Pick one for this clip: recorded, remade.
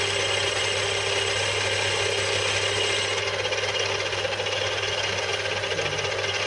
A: recorded